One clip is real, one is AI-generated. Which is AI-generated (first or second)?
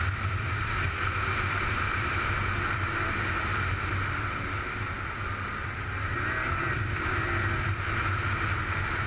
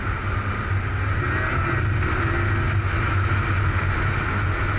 first